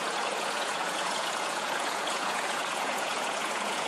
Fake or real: fake